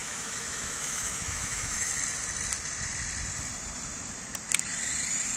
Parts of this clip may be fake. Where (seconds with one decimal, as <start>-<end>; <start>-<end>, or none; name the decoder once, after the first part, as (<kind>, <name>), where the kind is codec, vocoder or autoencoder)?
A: 0.0-1.9 (autoencoder, DAC-VAE)